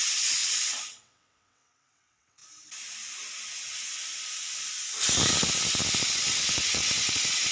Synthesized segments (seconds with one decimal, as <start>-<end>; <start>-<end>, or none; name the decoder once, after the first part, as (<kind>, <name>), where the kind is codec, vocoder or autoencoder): 0.0-2.4 (vocoder, WaveNeXt); 6.0-7.5